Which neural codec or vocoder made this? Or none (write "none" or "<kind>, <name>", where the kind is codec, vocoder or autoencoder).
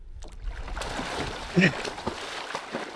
none